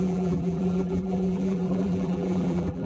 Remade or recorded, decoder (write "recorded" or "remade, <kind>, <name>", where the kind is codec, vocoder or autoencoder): remade, vocoder, BigVGAN v2